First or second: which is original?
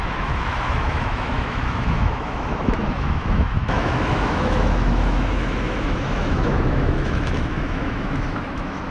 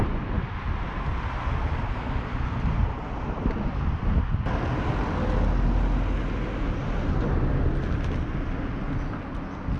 second